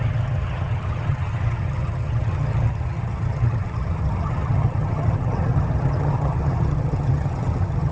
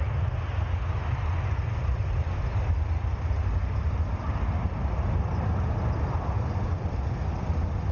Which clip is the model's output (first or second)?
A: first